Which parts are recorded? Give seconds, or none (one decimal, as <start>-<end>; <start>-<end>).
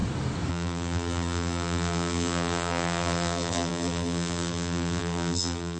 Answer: 0.0-0.5